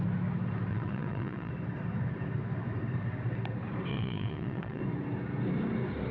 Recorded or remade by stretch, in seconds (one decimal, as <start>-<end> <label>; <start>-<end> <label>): 0.0-0.7 recorded; 0.7-1.5 remade; 1.5-3.9 recorded; 3.9-4.8 remade; 4.8-6.1 recorded